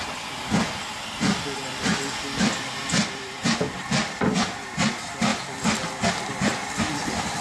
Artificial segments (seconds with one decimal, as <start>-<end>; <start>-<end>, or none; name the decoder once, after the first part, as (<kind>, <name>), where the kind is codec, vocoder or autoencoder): 0.0-5.3 (vocoder, BigVGAN v2); 6.7-7.4